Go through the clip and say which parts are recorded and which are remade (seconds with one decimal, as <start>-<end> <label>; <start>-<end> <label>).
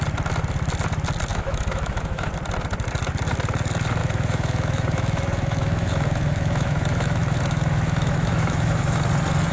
0.0-1.3 recorded; 1.3-2.3 remade; 2.3-4.0 recorded; 4.0-9.0 remade; 9.0-9.5 recorded